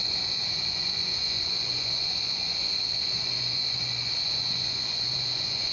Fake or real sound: fake